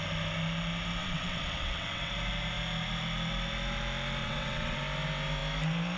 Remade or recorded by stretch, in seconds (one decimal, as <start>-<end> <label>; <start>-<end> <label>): 0.0-1.0 recorded; 1.0-2.1 remade; 2.1-4.2 recorded; 4.2-4.8 remade; 4.8-6.0 recorded